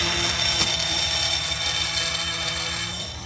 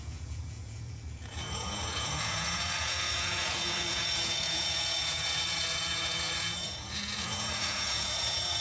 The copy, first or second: second